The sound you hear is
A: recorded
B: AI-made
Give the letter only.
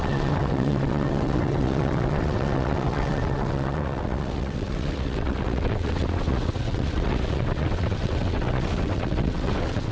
B